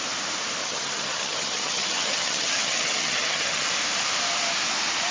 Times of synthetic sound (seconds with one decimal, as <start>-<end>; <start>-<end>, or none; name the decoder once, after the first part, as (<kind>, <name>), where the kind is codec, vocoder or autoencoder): 0.6-3.7 (vocoder, HiFi-GAN)